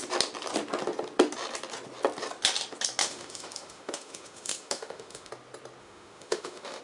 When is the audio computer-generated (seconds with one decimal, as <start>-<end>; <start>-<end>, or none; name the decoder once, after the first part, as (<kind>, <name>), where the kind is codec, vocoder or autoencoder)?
3.0-5.3 (autoencoder, DAC-VAE); 5.8-6.8